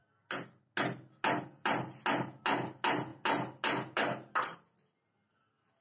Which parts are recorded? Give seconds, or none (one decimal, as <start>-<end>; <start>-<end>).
0.0-5.8